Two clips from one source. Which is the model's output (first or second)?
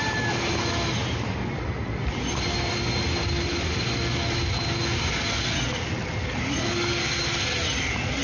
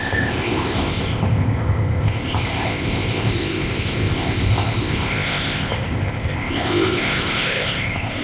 second